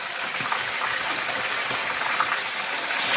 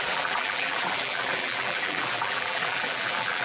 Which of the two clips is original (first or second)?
first